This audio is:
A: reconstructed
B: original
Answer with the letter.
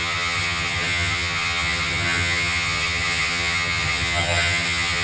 A